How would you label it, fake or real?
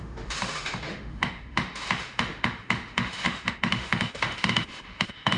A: fake